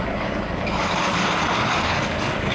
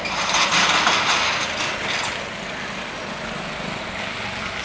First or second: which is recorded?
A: second